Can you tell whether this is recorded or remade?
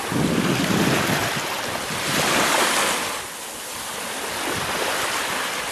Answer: recorded